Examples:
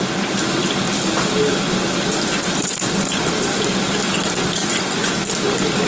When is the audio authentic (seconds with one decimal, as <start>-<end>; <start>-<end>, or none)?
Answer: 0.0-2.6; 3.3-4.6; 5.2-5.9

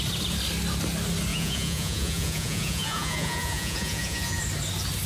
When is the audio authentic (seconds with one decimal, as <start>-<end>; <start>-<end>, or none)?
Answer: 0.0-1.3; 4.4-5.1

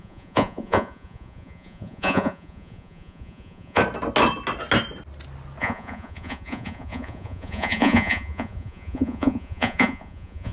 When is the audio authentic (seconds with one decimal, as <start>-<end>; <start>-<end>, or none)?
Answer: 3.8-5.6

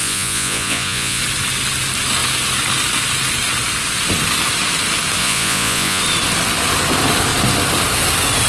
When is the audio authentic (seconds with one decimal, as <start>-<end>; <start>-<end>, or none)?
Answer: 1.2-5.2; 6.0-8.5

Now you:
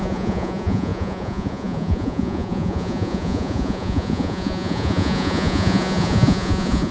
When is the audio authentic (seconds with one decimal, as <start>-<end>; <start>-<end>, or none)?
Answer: none

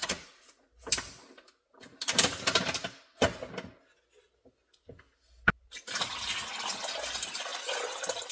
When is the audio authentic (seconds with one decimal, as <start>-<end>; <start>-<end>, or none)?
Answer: 0.8-8.3

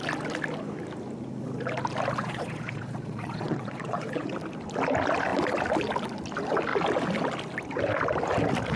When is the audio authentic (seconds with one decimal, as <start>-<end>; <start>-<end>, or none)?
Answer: 0.0-2.2; 4.3-8.8